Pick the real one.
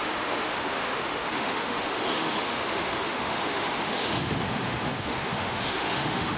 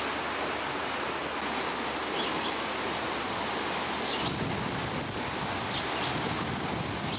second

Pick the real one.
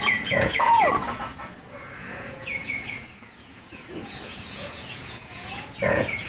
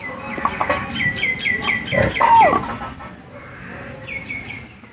second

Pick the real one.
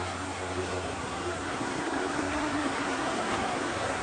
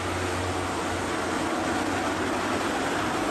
second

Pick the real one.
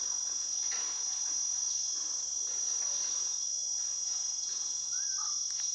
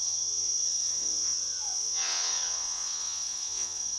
first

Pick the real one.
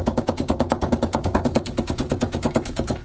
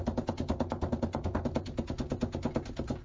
second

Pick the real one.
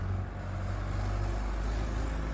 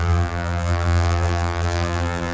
first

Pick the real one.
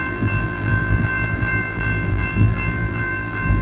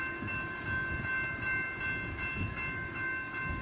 second